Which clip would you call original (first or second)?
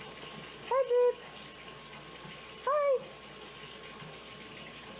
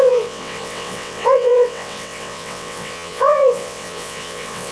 first